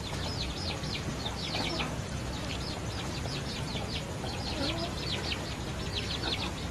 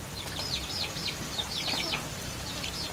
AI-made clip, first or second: second